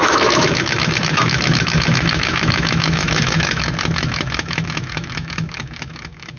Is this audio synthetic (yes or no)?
yes